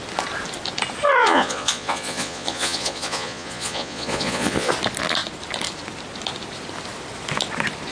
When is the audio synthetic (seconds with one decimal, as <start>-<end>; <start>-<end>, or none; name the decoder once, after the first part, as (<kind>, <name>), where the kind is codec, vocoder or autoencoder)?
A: 1.2-4.7 (vocoder, Vocos)